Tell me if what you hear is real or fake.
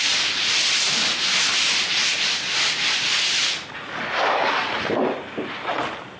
real